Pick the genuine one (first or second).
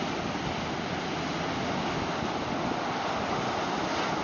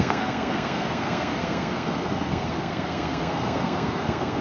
first